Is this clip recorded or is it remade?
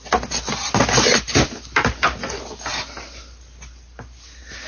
recorded